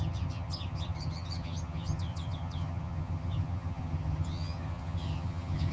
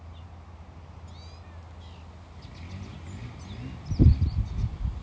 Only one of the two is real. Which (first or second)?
second